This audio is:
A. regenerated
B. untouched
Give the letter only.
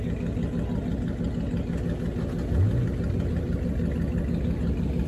B